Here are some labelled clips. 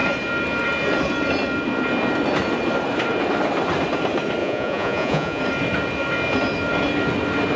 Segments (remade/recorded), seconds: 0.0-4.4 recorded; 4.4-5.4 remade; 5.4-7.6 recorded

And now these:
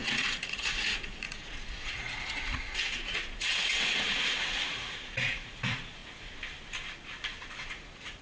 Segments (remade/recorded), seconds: 0.0-6.0 remade; 6.0-7.5 recorded; 7.5-8.2 remade